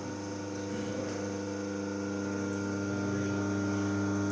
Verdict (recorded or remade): recorded